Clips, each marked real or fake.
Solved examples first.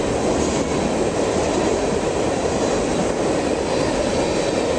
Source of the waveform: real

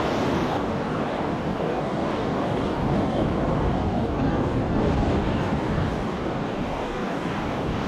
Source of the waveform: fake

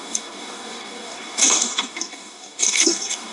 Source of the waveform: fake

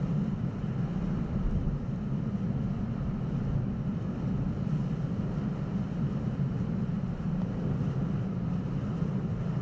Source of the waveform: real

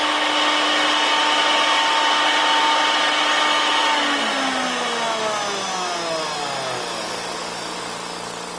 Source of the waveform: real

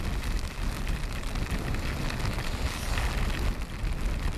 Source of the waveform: real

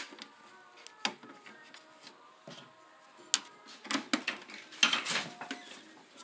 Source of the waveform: real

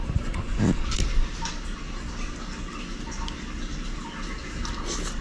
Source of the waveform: real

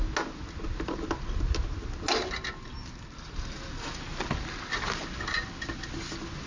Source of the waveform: real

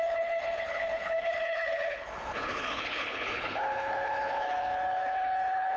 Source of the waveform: fake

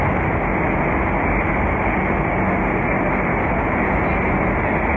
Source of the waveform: real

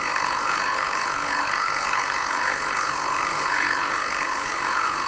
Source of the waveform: fake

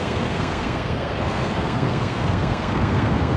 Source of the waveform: fake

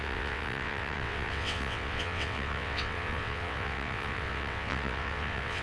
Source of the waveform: fake